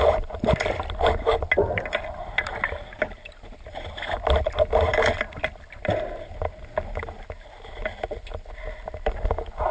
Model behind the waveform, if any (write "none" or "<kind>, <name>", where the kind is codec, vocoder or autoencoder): none